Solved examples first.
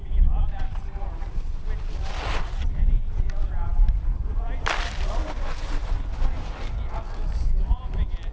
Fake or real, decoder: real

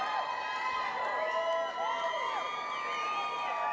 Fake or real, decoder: real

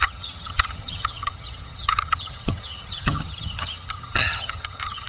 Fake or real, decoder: fake, vocoder, HiFi-GAN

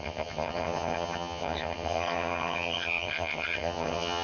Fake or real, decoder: fake, vocoder, HiFi-GAN